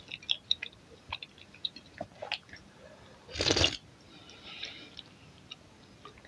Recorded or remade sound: recorded